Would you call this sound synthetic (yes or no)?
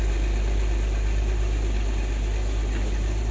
no